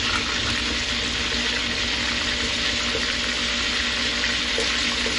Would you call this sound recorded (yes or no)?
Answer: yes